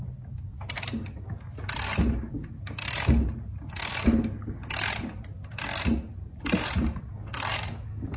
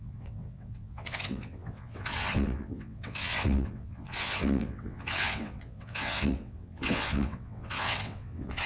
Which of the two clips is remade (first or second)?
second